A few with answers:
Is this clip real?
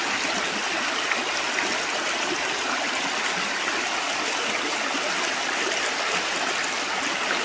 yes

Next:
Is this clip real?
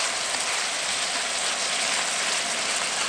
yes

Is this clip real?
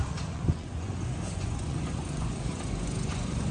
no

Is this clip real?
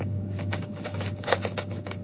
no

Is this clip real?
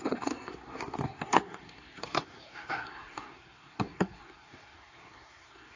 no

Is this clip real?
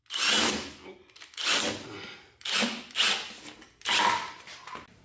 yes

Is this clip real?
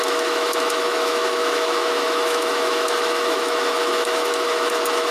no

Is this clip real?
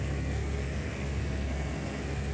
no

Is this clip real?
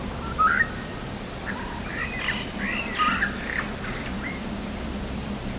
no